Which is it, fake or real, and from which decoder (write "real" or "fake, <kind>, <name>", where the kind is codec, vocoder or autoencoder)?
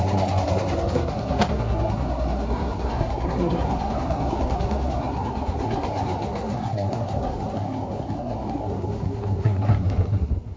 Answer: fake, codec, SNAC